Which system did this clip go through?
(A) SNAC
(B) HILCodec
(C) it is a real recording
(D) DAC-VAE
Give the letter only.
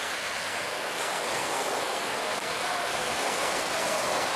A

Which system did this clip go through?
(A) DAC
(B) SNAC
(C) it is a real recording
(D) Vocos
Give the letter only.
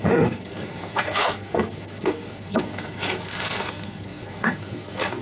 B